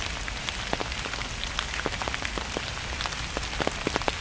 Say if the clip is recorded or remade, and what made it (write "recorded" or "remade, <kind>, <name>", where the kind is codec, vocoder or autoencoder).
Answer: recorded